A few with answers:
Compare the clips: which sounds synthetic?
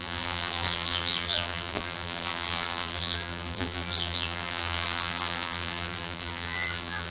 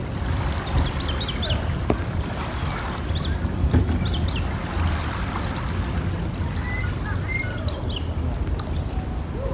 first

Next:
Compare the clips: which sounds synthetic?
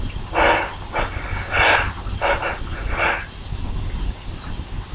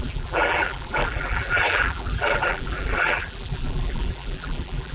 second